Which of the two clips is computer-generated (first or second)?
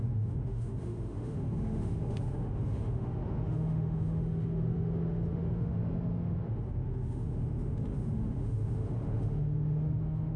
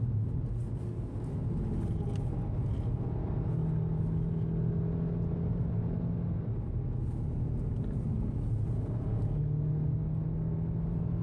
first